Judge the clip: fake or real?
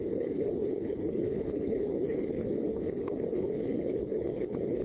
fake